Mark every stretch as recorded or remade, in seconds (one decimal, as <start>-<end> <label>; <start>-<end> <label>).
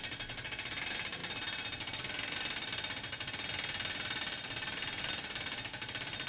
0.0-6.3 recorded